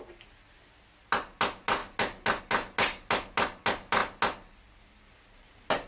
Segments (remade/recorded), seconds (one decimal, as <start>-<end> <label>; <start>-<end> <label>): 0.0-5.9 recorded